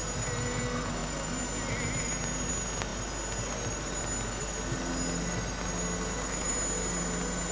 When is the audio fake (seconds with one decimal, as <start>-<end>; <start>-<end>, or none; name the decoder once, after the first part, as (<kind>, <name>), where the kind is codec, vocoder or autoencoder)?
none